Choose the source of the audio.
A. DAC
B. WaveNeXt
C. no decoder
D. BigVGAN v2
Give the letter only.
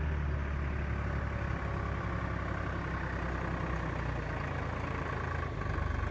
C